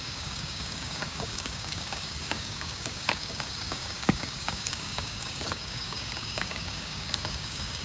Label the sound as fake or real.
fake